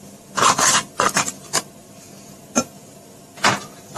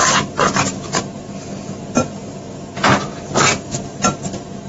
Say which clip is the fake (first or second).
first